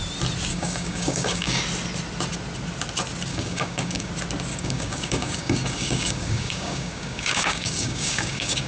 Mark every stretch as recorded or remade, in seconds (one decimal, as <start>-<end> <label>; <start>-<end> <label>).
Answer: 0.0-0.5 recorded; 0.5-1.6 remade; 1.6-3.3 recorded; 3.3-4.1 remade; 4.1-4.5 recorded; 4.5-8.7 remade